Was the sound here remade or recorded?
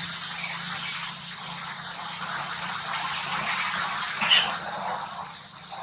recorded